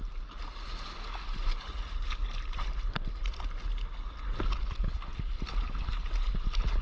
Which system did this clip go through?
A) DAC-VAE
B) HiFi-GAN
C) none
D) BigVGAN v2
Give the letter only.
C